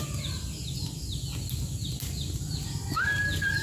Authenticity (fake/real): real